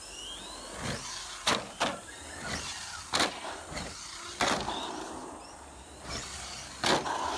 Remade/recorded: recorded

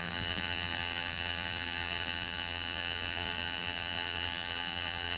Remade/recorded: remade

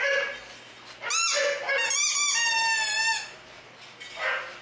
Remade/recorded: recorded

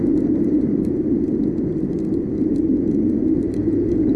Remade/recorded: recorded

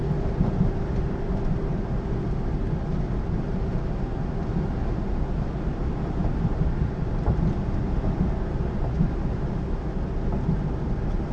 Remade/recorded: recorded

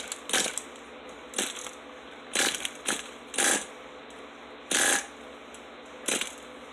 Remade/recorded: recorded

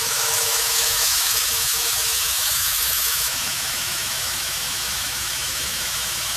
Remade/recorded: remade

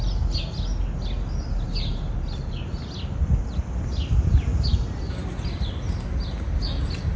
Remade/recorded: recorded